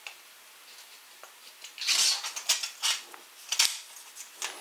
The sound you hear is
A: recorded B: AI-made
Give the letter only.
A